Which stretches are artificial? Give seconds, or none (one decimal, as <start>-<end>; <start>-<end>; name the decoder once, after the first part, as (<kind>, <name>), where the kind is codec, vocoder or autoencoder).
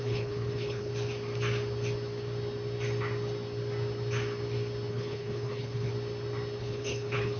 0.0-0.9 (codec, HILCodec); 4.9-5.9; 6.6-7.4